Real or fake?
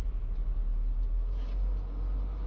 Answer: real